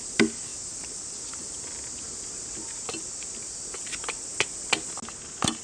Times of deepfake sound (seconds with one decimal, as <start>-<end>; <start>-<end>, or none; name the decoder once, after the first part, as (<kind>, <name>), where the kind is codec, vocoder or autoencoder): none